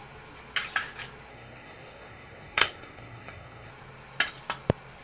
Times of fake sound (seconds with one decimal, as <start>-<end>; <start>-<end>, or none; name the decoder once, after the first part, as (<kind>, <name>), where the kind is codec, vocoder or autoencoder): 1.3-3.7 (codec, SNAC)